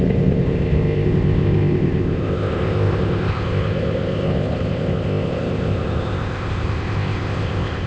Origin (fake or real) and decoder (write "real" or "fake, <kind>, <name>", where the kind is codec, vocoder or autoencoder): fake, codec, ZipCodec